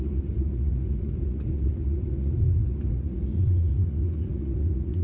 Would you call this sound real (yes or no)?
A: no